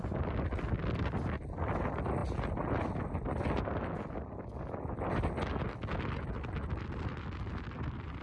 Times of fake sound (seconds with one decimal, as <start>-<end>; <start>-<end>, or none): none